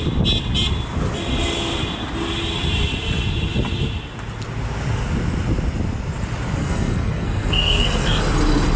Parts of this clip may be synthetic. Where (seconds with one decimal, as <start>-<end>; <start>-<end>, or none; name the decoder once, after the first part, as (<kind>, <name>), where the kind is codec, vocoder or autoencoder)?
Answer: 6.6-8.2 (codec, SNAC)